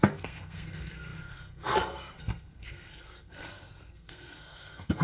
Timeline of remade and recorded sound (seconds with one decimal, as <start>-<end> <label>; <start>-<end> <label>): 0.0-5.0 remade